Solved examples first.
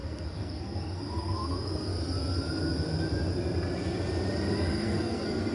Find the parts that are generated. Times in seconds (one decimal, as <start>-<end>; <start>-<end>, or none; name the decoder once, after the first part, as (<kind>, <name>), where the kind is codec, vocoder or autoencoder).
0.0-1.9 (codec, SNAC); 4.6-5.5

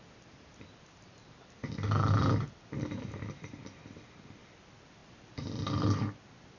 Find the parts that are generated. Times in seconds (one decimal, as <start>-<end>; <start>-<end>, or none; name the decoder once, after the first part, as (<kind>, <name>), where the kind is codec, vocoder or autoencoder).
none

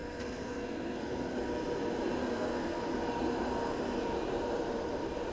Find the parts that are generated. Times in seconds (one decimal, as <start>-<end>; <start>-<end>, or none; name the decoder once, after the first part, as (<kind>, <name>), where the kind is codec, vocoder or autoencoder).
0.0-1.4 (codec, SNAC); 2.2-2.8

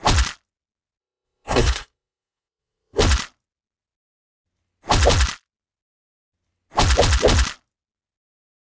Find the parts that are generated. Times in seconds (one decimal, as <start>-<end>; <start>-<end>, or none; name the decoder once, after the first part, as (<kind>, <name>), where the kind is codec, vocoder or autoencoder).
1.0-3.0 (codec, SNAC)

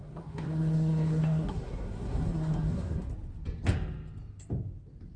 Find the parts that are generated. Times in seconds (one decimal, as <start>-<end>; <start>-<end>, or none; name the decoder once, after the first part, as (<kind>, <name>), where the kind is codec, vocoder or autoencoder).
0.0-3.1 (codec, SNAC)

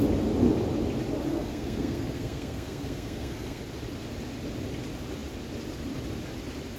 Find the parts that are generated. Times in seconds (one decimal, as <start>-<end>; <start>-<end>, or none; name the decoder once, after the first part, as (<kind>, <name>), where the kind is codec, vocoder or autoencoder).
1.3-3.6 (codec, SNAC)

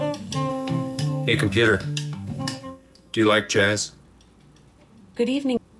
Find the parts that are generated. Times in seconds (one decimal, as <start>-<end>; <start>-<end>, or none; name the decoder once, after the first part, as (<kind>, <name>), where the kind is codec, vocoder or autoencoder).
0.5-4.0 (codec, SNAC)